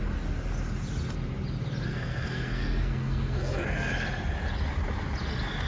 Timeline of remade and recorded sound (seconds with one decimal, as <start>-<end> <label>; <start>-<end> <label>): 0.0-1.9 recorded; 1.9-3.9 remade; 3.9-5.7 recorded